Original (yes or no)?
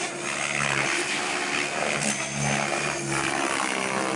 yes